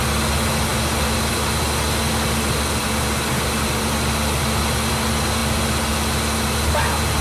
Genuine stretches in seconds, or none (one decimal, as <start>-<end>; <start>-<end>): 0.0-7.2